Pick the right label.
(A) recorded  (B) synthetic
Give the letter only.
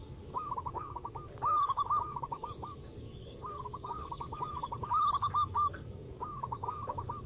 B